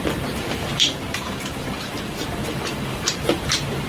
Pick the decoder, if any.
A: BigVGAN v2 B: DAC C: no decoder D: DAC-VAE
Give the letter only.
A